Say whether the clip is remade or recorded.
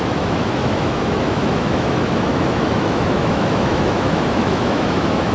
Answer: remade